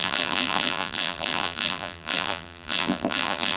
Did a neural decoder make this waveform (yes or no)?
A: yes